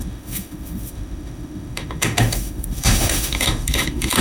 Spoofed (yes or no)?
yes